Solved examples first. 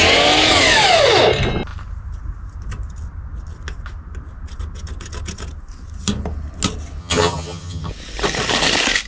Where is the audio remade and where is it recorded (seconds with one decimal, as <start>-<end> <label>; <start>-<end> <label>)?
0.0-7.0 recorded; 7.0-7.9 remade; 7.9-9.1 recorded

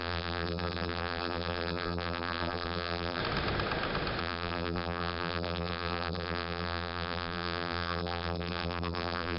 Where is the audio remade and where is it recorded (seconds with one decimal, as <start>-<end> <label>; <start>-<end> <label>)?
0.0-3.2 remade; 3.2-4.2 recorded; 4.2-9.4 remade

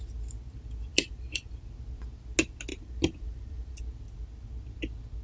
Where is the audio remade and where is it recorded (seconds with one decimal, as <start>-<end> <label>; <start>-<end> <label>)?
0.0-0.9 recorded; 0.9-1.5 remade; 1.5-2.7 recorded; 2.7-3.8 remade; 3.8-5.2 recorded

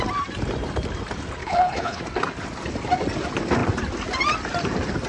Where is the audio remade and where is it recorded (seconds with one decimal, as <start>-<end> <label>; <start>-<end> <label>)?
0.0-1.4 recorded; 1.4-2.0 remade; 2.0-5.1 recorded

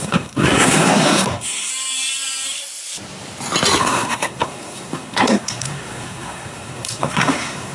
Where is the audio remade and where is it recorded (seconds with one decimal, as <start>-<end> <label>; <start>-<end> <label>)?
0.0-1.7 remade; 1.7-3.8 recorded; 3.8-7.7 remade

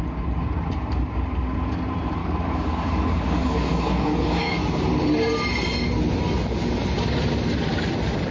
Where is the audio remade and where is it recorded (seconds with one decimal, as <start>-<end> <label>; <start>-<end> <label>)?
0.0-2.2 recorded; 2.2-4.6 remade; 4.6-8.3 recorded

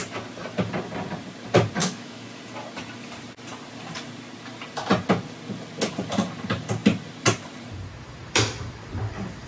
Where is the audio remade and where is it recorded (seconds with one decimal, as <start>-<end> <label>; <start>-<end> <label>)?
0.0-1.8 recorded; 1.8-2.4 remade; 2.4-9.5 recorded

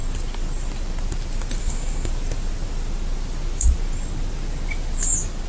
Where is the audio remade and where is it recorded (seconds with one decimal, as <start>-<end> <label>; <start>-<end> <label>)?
0.0-1.6 recorded; 1.6-2.1 remade; 2.1-5.5 recorded